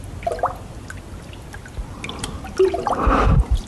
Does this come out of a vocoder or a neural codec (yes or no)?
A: no